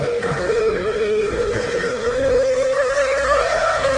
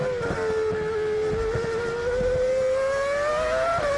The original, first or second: second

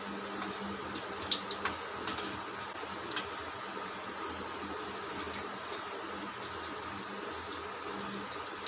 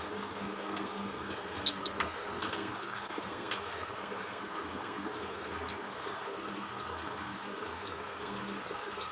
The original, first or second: first